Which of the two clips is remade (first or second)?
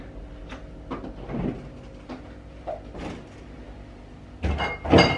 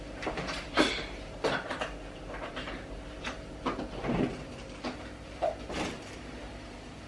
second